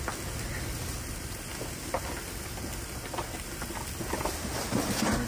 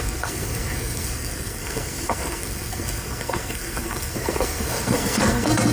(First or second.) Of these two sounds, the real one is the first